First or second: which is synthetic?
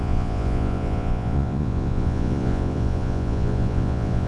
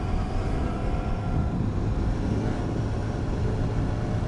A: first